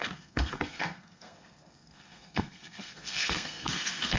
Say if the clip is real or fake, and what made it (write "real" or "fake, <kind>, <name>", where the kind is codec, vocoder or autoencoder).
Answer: fake, codec, SNAC